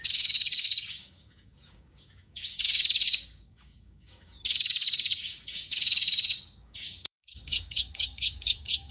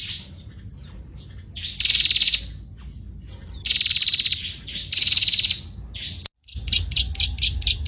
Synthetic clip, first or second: first